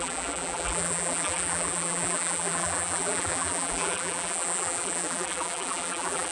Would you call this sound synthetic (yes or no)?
yes